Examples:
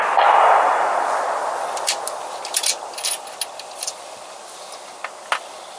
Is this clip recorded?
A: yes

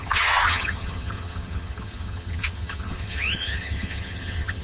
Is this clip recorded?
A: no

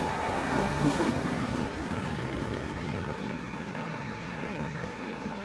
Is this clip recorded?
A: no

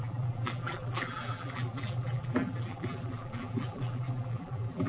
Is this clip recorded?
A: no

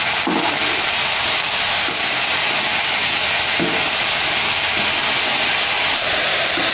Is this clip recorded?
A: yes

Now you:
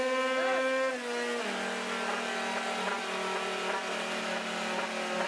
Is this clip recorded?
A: yes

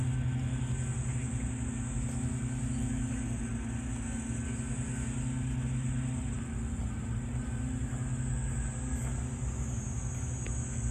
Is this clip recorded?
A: yes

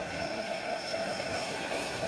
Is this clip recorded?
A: no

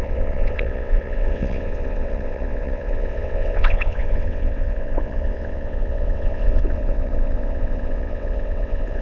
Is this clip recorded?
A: no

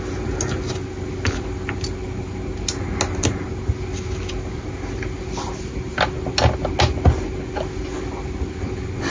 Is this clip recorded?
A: yes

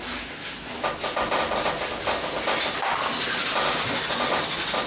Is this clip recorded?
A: yes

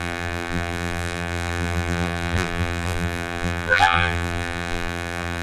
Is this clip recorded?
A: no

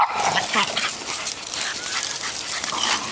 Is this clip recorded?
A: yes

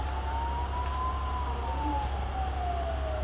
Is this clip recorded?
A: yes